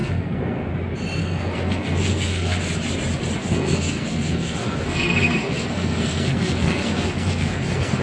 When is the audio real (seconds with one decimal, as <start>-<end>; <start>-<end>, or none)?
0.7-1.2; 2.7-3.4

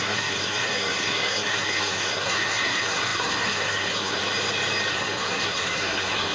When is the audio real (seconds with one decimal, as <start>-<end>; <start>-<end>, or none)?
4.2-4.9